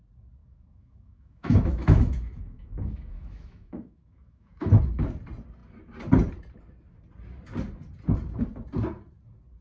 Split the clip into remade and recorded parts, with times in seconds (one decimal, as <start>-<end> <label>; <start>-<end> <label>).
0.0-0.4 recorded; 0.4-4.8 remade; 4.8-9.6 recorded